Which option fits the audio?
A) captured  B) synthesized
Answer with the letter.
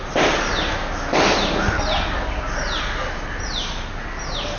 A